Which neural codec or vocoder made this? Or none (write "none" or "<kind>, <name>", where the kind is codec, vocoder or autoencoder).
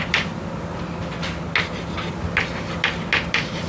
none